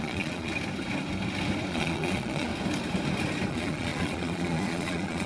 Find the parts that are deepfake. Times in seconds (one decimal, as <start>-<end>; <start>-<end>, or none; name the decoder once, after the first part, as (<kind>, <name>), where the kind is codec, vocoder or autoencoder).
0.0-0.5 (vocoder, Vocos); 1.7-2.5; 3.5-5.3